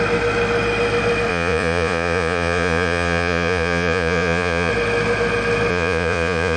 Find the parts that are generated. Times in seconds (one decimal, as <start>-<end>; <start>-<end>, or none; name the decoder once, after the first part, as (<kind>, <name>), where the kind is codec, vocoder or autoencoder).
1.3-4.7 (vocoder, Vocos); 5.7-6.6